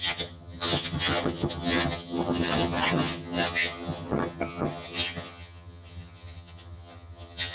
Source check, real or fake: fake